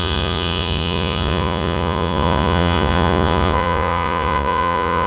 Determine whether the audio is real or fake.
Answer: fake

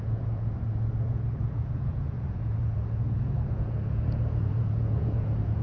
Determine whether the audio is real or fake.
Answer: fake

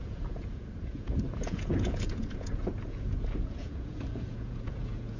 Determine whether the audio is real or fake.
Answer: fake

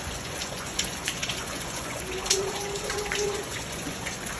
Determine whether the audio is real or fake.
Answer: fake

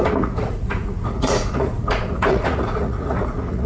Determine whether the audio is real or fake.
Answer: fake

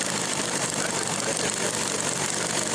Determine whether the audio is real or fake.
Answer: real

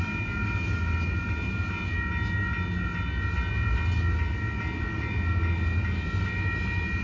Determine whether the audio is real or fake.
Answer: real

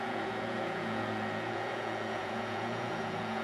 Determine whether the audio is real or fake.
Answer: fake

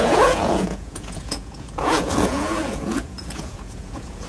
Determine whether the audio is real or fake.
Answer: fake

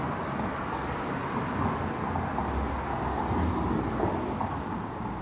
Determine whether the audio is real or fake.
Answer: real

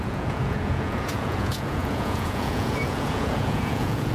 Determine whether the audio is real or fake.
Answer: fake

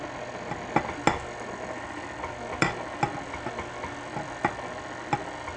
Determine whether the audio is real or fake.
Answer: real